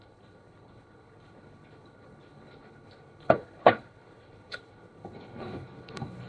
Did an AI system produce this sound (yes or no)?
yes